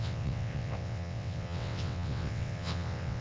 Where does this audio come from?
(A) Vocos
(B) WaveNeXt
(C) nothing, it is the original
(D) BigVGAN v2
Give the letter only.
B